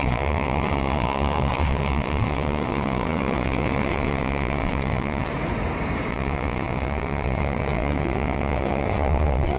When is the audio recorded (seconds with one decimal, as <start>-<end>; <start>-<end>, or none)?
5.3-6.1